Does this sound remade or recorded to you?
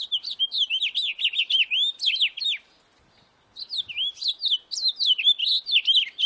recorded